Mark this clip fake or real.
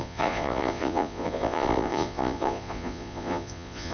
fake